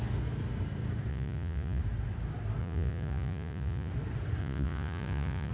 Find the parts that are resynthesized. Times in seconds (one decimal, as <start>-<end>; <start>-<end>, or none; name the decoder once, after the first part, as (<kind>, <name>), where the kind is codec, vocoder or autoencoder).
1.1-1.8 (vocoder, Vocos); 2.6-3.9; 4.4-5.5